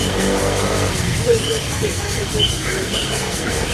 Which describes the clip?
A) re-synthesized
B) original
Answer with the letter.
A